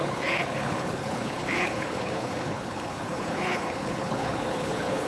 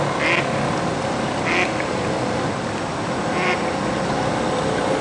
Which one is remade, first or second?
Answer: first